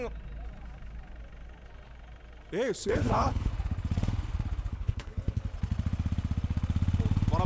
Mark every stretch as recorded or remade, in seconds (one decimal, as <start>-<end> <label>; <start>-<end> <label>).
0.0-2.8 recorded; 2.8-3.5 remade; 3.5-4.7 recorded; 4.7-5.4 remade; 5.4-7.5 recorded